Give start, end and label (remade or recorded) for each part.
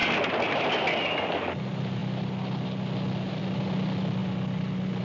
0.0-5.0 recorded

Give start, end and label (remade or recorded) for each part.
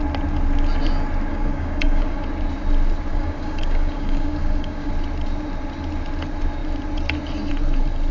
0.0-1.3 recorded; 1.3-2.2 remade; 2.2-3.1 recorded; 3.1-4.9 remade; 4.9-8.1 recorded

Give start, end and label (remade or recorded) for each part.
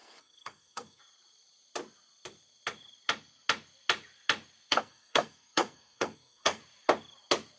0.0-1.0 remade; 1.0-4.7 recorded; 4.7-6.6 remade; 6.6-7.6 recorded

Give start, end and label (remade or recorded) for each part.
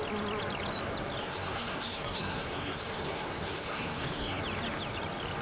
0.0-1.2 recorded; 1.2-4.4 remade; 4.4-5.4 recorded